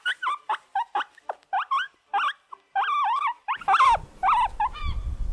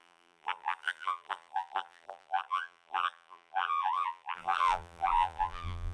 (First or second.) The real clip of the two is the first